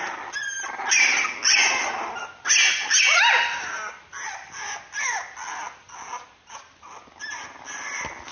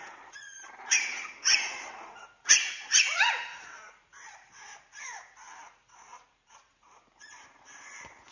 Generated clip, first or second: second